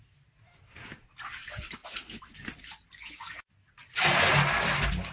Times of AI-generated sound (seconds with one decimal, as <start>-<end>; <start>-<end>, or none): none